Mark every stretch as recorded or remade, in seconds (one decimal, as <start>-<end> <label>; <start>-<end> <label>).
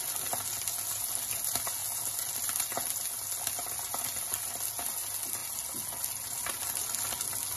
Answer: 0.0-7.6 recorded